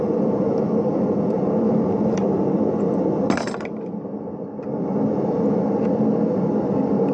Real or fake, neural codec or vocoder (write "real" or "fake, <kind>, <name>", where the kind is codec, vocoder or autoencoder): fake, vocoder, BigVGAN v2